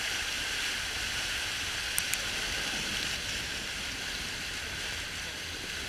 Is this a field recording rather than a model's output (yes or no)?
yes